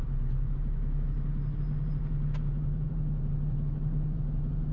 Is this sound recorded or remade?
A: remade